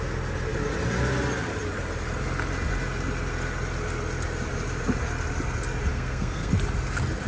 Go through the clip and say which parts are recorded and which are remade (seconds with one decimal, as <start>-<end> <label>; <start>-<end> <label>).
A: 0.0-5.9 recorded; 5.9-6.5 remade; 6.5-7.3 recorded